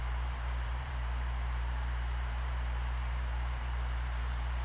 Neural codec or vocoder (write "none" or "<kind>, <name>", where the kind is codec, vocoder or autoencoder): vocoder, BigVGAN v2